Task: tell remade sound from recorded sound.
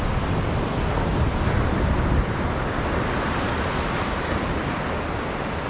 recorded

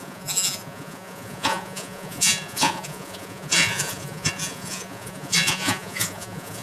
remade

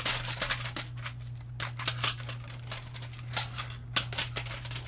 recorded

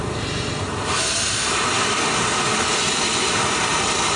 recorded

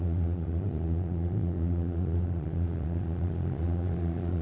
remade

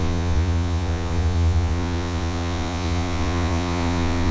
remade